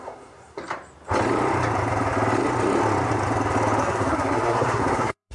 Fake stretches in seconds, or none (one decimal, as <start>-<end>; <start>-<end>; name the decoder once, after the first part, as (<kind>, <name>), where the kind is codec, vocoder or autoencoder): 0.0-0.6 (codec, SNAC); 3.8-5.3